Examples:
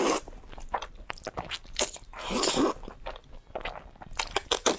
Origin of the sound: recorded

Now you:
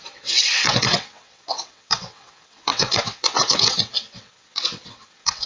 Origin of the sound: remade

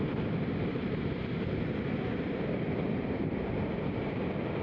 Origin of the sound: recorded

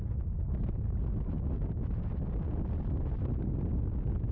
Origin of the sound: recorded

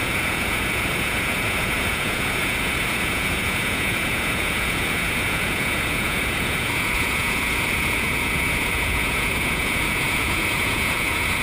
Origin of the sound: remade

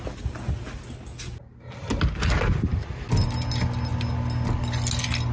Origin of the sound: recorded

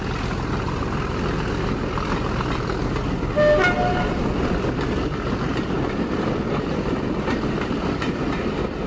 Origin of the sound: recorded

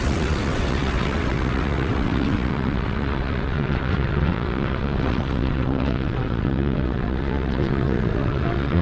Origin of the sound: remade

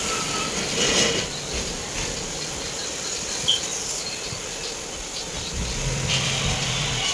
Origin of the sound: recorded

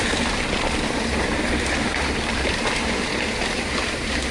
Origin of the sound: remade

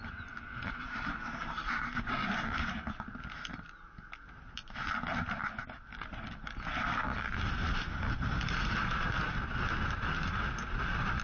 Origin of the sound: recorded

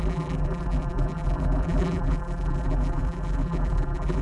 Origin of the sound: remade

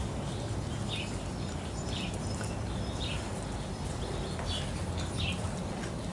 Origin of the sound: recorded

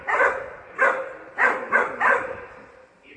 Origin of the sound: remade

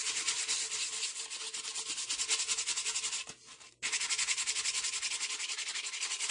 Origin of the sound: recorded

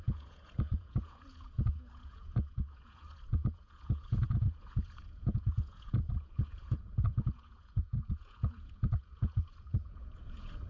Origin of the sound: remade